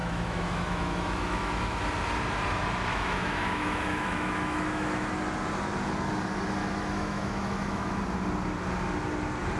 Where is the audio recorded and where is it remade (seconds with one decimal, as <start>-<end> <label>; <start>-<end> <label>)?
0.0-1.8 remade; 1.8-2.9 recorded; 2.9-5.1 remade; 5.1-6.6 recorded; 6.6-8.0 remade; 8.0-9.6 recorded